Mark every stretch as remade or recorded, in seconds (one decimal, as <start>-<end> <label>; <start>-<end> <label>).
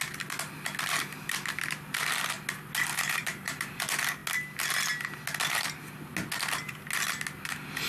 0.0-2.9 recorded; 2.9-3.8 remade; 3.8-7.9 recorded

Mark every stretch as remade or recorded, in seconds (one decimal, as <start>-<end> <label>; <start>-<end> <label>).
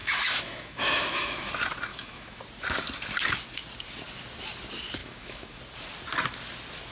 0.0-1.5 remade; 1.5-1.9 recorded; 1.9-2.4 remade; 2.4-5.0 recorded; 5.0-5.6 remade; 5.6-6.9 recorded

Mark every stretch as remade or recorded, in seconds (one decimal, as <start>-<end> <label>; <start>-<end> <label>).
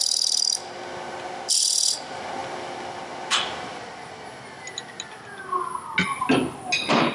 0.0-7.1 recorded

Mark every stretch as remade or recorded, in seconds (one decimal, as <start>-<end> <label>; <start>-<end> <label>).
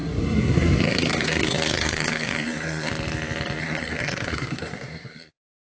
0.0-2.9 remade; 2.9-3.6 recorded; 3.6-5.3 remade; 5.3-5.8 recorded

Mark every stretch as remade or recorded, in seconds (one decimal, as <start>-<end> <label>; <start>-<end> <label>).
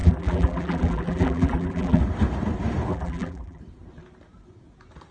0.0-2.0 remade; 2.0-2.9 recorded; 2.9-3.6 remade; 3.6-5.1 recorded